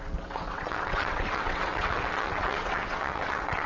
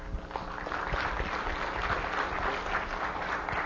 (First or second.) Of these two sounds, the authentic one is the second